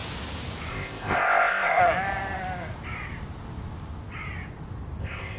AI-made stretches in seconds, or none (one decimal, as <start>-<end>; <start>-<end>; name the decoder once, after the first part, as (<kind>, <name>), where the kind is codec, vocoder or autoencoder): 0.7-1.8 (codec, ZipCodec); 5.0-5.4